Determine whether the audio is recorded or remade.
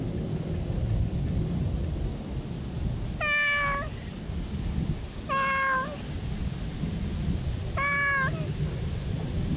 recorded